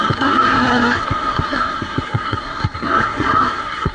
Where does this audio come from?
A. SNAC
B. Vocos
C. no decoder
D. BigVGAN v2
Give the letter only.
A